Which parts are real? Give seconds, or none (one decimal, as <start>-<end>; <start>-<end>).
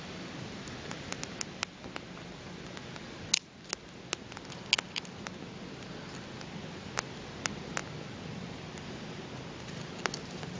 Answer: 0.0-10.6